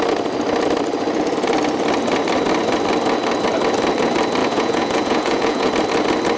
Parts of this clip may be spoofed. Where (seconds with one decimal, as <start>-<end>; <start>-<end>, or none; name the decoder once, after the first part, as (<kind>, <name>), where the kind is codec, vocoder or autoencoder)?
4.4-5.7 (vocoder, Vocos)